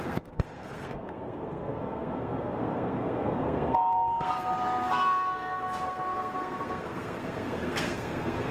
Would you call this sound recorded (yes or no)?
no